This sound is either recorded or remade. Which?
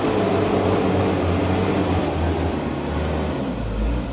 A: recorded